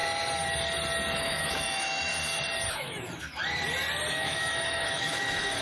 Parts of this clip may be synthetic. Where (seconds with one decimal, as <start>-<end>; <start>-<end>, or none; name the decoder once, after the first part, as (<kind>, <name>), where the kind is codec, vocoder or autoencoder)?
1.2-2.1 (autoencoder, DAC-VAE); 2.7-3.4; 4.1-5.6